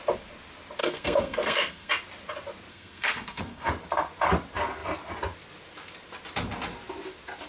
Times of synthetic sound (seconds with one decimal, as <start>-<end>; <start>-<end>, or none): 0.8-1.9; 2.7-3.7